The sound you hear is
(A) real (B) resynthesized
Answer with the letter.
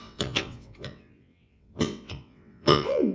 B